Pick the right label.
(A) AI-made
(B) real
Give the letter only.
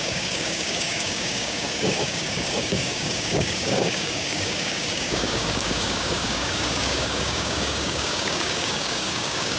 A